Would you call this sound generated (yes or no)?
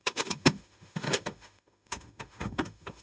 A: yes